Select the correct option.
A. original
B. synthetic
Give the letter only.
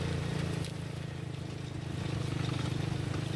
A